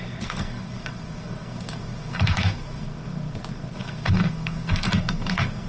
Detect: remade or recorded remade